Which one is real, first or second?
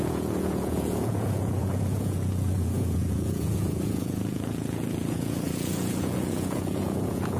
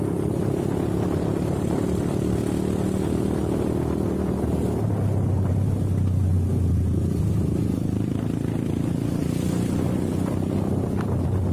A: second